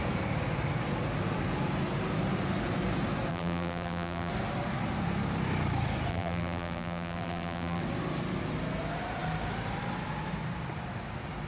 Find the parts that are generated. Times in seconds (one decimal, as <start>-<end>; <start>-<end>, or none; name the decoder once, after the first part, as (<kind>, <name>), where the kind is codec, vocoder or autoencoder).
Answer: 3.3-4.3 (vocoder, BigVGAN v2); 6.1-7.8